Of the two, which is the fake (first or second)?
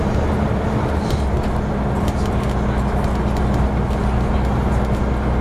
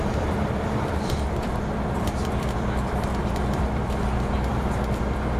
second